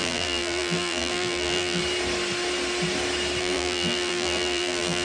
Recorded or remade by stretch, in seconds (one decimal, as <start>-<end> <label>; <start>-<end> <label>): 0.0-1.8 remade; 1.8-3.4 recorded; 3.4-5.0 remade